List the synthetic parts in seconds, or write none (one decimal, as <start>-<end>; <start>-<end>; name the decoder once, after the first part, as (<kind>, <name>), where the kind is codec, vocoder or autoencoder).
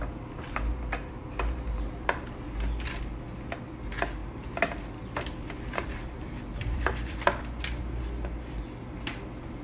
4.2-7.4 (vocoder, BigVGAN v2)